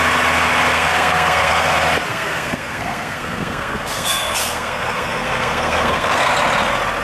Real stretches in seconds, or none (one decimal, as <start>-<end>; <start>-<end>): 0.0-0.7; 1.7-2.1; 6.3-7.0